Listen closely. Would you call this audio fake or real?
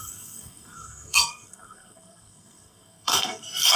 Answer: fake